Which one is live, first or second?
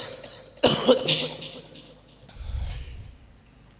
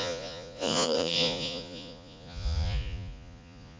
first